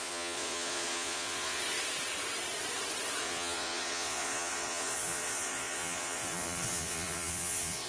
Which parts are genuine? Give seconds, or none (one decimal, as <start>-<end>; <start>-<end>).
1.6-3.2